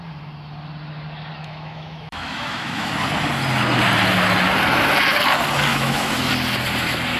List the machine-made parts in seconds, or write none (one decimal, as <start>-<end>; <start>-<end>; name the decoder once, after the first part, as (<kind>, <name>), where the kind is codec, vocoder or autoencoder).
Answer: 1.4-2.9 (autoencoder, DAC-VAE); 5.7-6.3